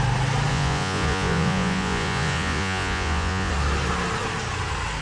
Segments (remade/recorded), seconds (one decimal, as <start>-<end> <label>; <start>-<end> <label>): 0.0-0.5 recorded; 0.5-3.5 remade; 3.5-5.0 recorded